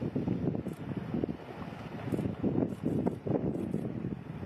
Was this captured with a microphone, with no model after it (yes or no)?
yes